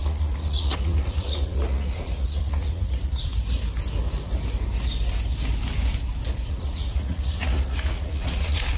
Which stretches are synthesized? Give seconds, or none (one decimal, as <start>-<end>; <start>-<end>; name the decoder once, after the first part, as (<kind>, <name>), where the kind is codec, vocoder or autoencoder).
0.0-3.3 (vocoder, Vocos); 6.5-8.8